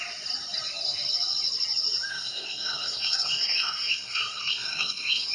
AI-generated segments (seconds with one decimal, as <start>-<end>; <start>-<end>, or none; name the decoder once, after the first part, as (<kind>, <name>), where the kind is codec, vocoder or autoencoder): 2.1-5.3 (codec, SNAC)